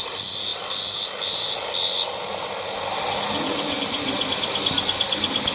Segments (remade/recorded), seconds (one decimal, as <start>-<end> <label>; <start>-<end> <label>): 0.0-5.5 recorded